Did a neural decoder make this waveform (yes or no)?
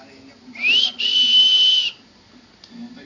no